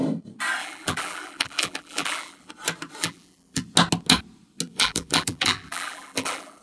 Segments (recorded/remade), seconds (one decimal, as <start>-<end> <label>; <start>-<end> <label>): 0.0-0.6 recorded; 0.6-2.5 remade; 2.5-3.0 recorded; 3.0-3.6 remade; 3.6-4.7 recorded; 4.7-6.6 remade